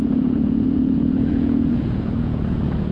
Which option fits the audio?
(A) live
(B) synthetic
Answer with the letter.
B